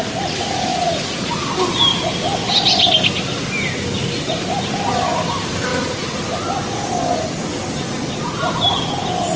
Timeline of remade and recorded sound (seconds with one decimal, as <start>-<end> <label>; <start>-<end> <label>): 0.0-0.7 recorded; 0.7-1.5 remade; 1.5-5.7 recorded; 5.7-6.4 remade; 6.4-9.4 recorded